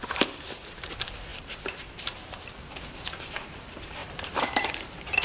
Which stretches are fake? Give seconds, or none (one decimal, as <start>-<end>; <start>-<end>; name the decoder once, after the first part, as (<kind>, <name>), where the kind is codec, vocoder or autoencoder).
4.0-4.7 (vocoder, BigVGAN v2)